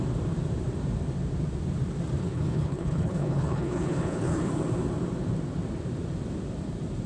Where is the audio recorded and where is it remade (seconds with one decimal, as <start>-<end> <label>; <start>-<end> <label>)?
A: 0.0-2.2 recorded; 2.2-4.5 remade; 4.5-7.1 recorded